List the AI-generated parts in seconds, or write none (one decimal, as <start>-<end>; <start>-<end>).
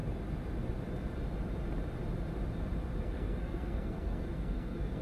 3.0-5.0